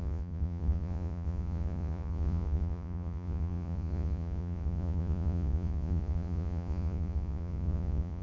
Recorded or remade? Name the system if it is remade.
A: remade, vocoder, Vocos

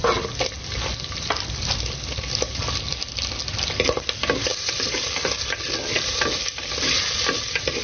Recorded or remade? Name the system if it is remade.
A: recorded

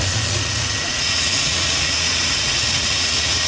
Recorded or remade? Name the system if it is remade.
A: remade, vocoder, Vocos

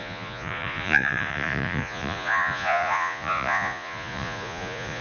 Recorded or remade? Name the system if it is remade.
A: remade, vocoder, Vocos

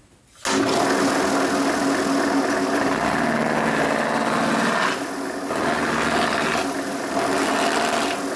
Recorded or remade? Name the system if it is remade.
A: recorded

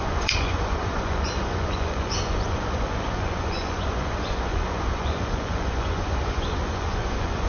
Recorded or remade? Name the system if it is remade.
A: remade, vocoder, Vocos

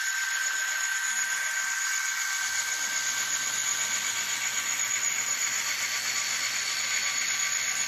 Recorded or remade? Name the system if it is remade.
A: recorded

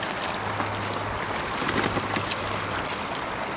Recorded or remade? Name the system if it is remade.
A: recorded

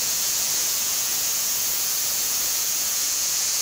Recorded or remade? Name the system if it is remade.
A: remade, vocoder, Vocos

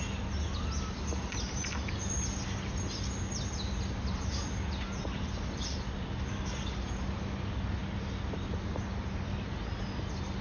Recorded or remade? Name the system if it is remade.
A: recorded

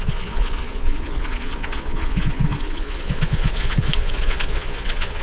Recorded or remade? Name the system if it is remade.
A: remade, vocoder, Vocos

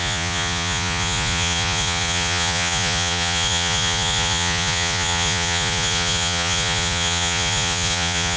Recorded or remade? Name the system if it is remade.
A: remade, vocoder, Vocos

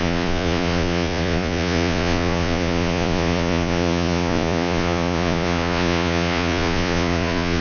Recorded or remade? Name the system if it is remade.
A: remade, vocoder, Vocos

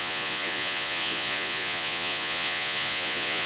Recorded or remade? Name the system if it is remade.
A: remade, vocoder, Vocos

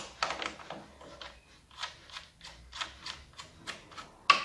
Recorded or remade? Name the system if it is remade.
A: recorded